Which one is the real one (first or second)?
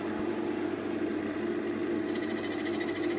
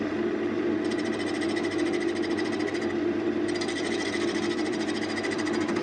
first